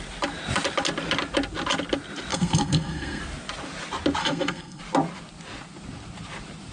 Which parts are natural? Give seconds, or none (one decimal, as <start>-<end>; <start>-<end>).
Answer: 0.0-2.3; 3.2-4.2; 4.8-6.7